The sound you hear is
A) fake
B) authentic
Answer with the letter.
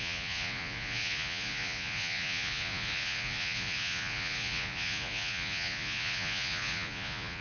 A